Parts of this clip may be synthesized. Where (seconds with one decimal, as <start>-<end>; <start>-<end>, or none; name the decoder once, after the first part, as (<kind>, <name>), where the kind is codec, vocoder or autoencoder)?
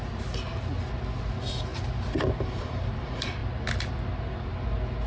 none